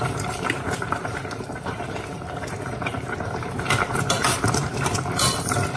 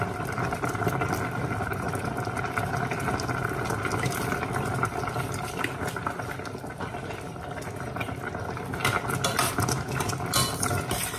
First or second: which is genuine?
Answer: second